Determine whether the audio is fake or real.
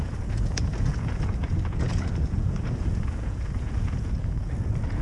fake